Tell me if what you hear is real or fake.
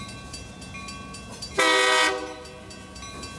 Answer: real